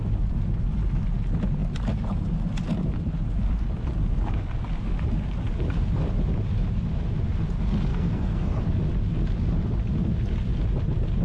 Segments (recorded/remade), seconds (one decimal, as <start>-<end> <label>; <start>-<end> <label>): 0.0-7.9 recorded; 7.9-8.6 remade; 8.6-11.2 recorded